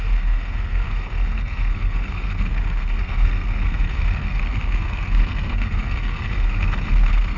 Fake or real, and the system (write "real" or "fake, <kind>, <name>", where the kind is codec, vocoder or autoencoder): fake, codec, SNAC